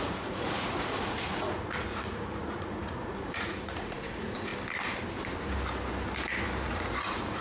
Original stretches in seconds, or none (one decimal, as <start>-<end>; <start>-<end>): 4.5-6.7